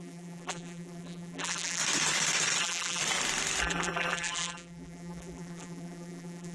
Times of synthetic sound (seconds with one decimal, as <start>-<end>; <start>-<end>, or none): 0.0-1.8; 2.6-3.0; 3.6-6.5